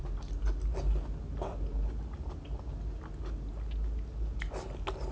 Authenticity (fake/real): real